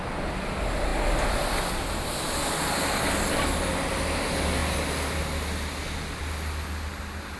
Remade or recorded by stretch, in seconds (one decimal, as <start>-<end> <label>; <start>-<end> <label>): 0.0-7.4 recorded